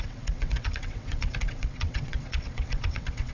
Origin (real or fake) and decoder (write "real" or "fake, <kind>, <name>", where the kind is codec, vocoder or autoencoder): fake, vocoder, WaveNeXt